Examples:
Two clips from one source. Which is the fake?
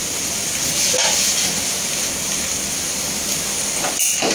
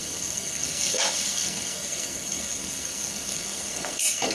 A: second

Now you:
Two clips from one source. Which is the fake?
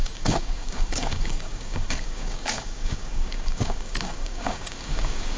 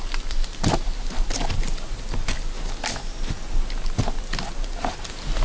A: first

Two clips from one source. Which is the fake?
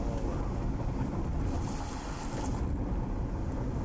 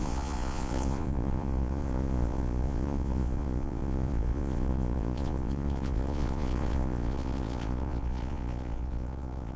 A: second